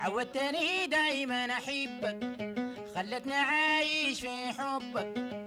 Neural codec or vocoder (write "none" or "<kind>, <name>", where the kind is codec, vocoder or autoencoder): vocoder, BigVGAN v2